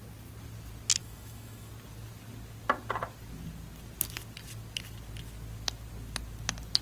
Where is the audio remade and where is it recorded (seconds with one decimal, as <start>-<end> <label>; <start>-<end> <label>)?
0.0-1.0 recorded; 1.0-1.7 remade; 1.7-6.8 recorded